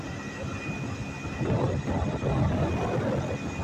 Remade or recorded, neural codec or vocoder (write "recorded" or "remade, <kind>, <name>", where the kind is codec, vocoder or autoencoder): recorded